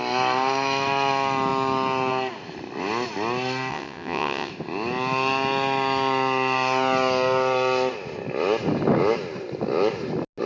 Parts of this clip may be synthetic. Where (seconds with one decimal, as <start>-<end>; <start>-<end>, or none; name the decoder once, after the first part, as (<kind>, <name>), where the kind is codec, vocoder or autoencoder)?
3.7-4.5 (vocoder, WaveNeXt)